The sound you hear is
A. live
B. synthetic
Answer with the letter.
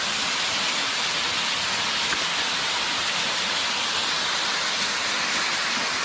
A